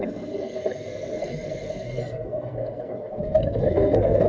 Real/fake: fake